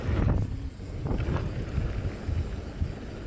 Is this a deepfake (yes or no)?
no